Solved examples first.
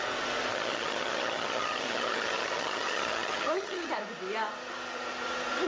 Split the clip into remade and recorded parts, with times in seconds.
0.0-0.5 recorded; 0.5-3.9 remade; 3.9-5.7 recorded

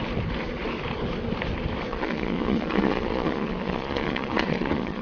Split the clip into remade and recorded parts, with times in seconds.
0.0-1.9 recorded; 1.9-5.0 remade

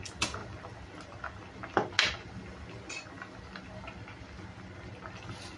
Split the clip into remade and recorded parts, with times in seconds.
0.0-5.6 recorded

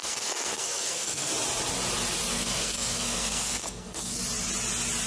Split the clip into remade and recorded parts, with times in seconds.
0.0-1.3 remade; 1.3-2.3 recorded; 2.3-4.2 remade; 4.2-5.1 recorded

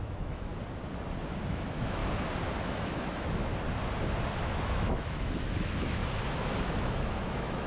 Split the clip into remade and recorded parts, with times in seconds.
0.0-0.5 remade; 0.5-1.5 recorded; 1.5-2.0 remade; 2.0-2.8 recorded; 2.8-3.5 remade; 3.5-4.4 recorded; 4.4-6.0 remade; 6.0-6.6 recorded; 6.6-7.7 remade

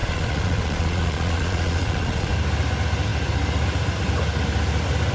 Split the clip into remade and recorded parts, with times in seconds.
0.0-2.3 remade; 2.3-5.1 recorded